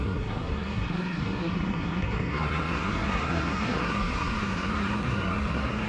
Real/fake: fake